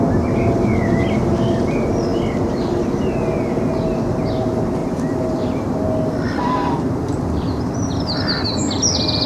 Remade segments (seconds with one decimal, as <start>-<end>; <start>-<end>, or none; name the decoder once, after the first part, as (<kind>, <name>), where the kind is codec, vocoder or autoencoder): 2.1-2.9 (vocoder, BigVGAN v2); 4.8-5.8